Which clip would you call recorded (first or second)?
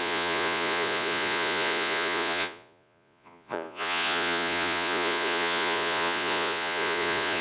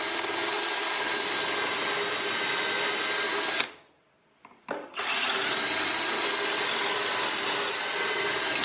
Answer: second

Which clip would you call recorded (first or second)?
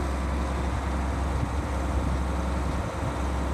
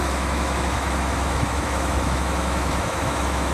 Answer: first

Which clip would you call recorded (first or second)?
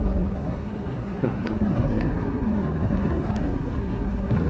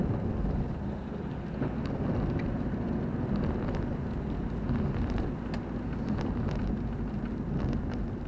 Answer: second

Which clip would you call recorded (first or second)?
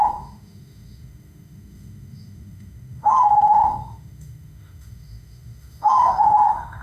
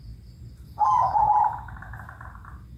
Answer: second